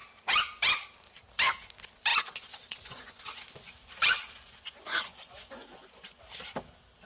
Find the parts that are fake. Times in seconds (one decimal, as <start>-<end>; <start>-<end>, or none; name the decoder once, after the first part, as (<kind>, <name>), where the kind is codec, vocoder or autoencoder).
2.1-6.2 (vocoder, Vocos)